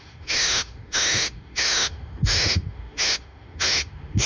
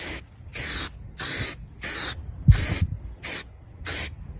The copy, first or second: first